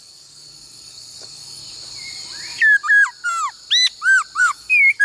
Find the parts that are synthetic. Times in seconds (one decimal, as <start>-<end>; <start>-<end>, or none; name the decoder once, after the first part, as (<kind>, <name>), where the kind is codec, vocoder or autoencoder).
0.0-1.6 (codec, DAC); 4.4-5.0